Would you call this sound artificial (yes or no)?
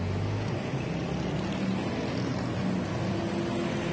no